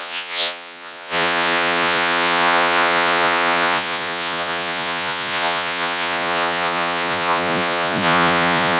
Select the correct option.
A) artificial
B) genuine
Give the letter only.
A